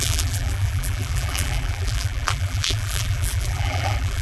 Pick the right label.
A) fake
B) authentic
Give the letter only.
A